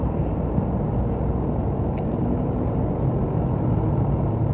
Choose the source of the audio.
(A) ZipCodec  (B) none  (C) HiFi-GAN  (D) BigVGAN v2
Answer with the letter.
B